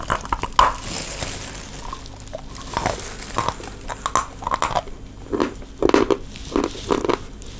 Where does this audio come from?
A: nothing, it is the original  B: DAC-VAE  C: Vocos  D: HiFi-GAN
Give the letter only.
A